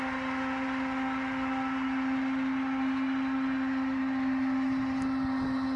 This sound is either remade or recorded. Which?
recorded